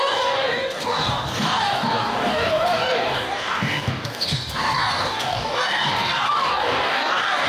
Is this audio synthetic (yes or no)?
yes